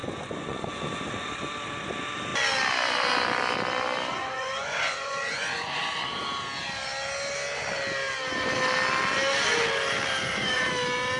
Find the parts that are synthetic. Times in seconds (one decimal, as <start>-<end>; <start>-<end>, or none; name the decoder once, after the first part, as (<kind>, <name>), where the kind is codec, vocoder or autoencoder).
0.0-1.3 (vocoder, Vocos); 4.1-5.8; 10.2-10.7